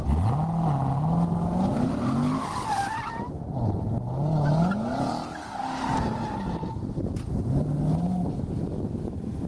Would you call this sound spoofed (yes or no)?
no